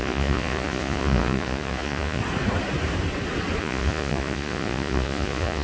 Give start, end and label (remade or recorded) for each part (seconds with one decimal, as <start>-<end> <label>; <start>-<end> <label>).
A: 0.0-2.2 remade; 2.2-3.6 recorded; 3.6-5.6 remade